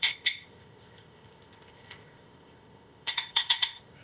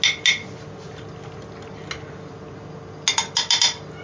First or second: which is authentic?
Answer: second